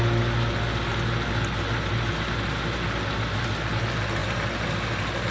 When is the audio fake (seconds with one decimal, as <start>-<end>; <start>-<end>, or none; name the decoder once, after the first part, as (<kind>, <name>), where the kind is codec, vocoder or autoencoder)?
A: none